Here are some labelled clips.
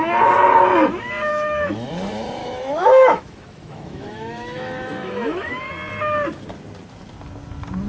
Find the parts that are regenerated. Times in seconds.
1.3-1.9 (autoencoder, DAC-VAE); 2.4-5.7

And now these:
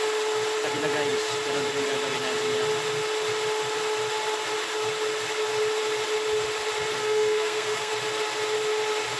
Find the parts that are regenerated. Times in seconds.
7.0-7.9 (codec, SNAC)

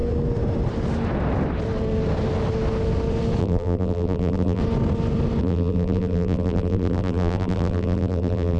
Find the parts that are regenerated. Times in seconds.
3.4-4.6 (vocoder, BigVGAN v2); 5.4-8.6

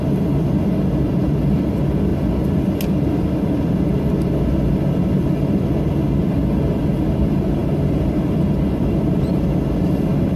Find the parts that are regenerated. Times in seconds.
7.6-9.2 (vocoder, BigVGAN v2)

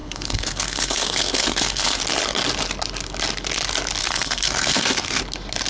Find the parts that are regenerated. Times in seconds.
0.0-2.0 (codec, SNAC); 4.0-5.2

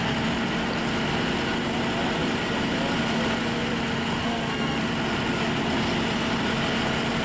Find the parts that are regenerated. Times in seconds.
4.2-4.8 (codec, SNAC)